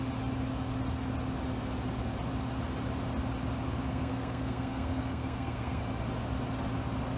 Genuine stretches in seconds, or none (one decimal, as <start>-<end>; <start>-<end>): 0.0-3.9; 5.8-7.2